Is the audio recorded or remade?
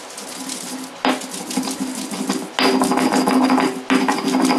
recorded